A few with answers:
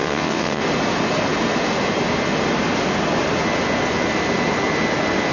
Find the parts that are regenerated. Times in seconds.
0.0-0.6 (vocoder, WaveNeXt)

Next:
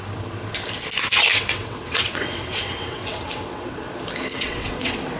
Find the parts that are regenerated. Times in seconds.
1.3-3.9 (vocoder, WaveNeXt); 4.3-5.2